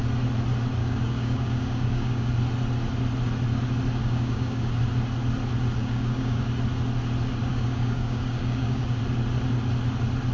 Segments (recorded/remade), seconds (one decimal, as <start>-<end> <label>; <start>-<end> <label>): 0.0-0.8 recorded; 0.8-2.3 remade; 2.3-4.0 recorded; 4.0-4.8 remade; 4.8-5.8 recorded; 5.8-6.4 remade; 6.4-7.5 recorded; 7.5-9.0 remade; 9.0-10.3 recorded